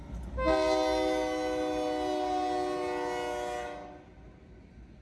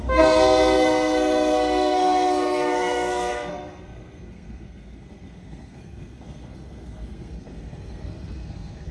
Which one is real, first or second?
first